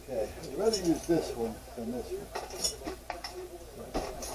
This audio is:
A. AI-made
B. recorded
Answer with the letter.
A